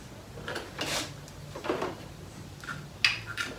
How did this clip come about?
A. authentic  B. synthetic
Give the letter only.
A